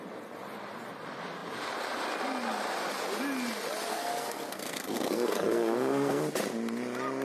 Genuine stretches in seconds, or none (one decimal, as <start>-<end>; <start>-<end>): 0.0-3.9; 6.2-7.2